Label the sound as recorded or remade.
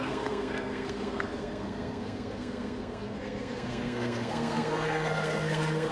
remade